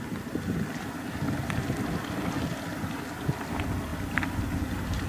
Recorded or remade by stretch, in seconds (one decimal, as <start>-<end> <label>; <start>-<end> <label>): 0.0-5.1 recorded